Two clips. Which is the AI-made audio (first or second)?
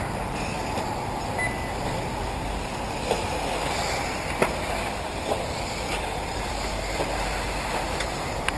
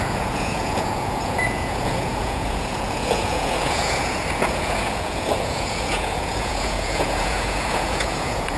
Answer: second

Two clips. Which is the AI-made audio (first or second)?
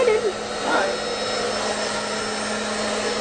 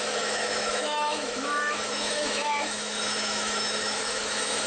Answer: second